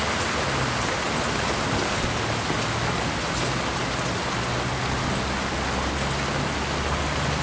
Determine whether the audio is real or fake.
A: real